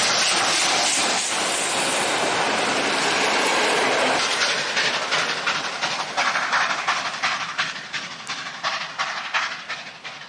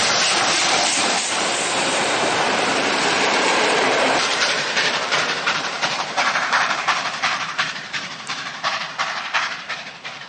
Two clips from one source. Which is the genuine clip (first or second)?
first